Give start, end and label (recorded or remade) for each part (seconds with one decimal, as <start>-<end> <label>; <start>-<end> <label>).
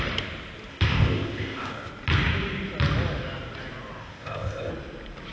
0.0-0.7 recorded; 0.7-1.9 remade; 1.9-4.0 recorded; 4.0-4.7 remade; 4.7-5.3 recorded